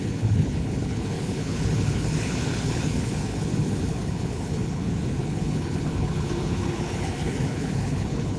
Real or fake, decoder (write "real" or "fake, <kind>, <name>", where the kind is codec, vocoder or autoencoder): fake, codec, HILCodec